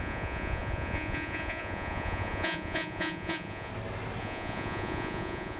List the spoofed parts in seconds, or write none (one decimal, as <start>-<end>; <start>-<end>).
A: 0.0-3.7; 4.2-5.6